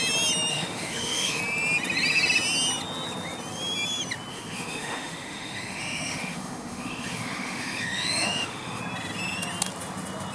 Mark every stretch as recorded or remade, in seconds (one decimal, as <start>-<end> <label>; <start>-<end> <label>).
0.0-0.5 recorded; 0.5-1.4 remade; 1.4-4.3 recorded; 4.3-8.8 remade; 8.8-10.3 recorded